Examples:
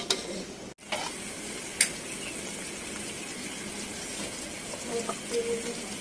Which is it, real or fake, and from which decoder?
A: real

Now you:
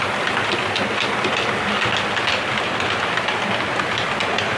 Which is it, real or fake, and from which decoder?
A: real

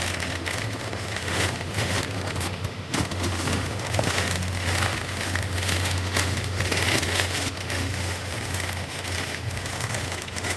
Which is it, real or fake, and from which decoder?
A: fake, autoencoder, DAC-VAE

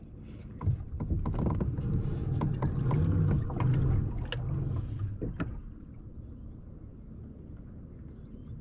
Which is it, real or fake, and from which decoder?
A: real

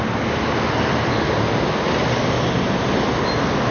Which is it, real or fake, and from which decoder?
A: real